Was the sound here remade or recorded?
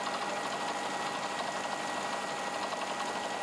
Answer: recorded